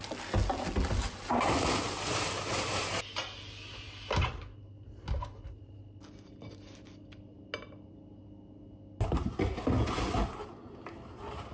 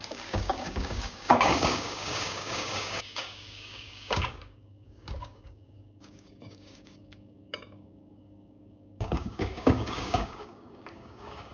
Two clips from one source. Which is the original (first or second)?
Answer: first